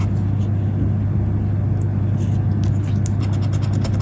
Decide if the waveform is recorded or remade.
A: recorded